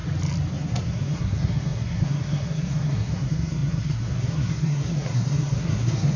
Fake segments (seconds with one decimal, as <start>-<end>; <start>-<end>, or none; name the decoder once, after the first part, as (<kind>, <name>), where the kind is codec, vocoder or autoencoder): 0.5-6.2 (codec, SNAC)